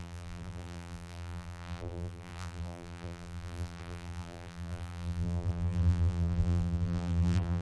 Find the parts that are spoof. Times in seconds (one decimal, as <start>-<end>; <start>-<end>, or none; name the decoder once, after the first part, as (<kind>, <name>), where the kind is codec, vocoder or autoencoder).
0.0-7.6 (vocoder, BigVGAN v2)